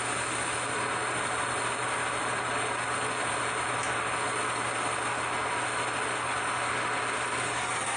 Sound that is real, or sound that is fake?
real